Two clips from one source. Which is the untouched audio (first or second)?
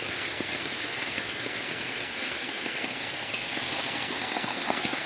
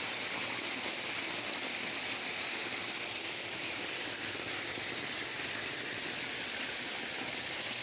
second